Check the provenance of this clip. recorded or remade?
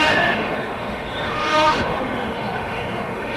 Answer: remade